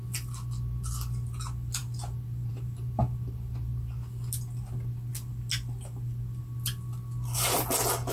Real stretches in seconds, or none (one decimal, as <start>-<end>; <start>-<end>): 0.0-8.1